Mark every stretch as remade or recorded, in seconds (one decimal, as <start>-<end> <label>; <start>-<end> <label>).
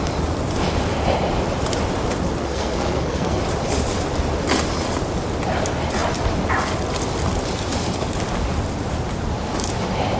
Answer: 0.0-2.4 recorded; 2.4-3.4 remade; 3.4-10.2 recorded